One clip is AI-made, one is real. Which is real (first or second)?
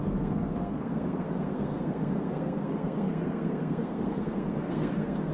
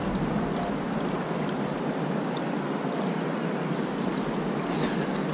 second